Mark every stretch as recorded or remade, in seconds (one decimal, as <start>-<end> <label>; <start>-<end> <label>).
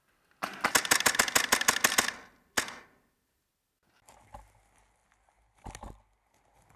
0.0-6.8 recorded